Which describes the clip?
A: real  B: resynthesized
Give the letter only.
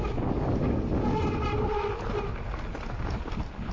A